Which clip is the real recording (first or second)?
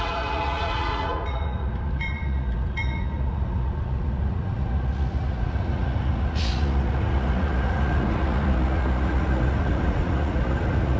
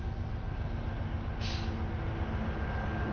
second